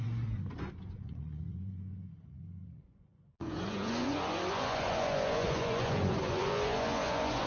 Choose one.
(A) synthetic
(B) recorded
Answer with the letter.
A